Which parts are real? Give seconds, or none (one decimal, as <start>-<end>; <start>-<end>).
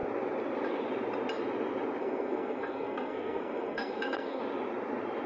0.0-2.0; 4.4-5.3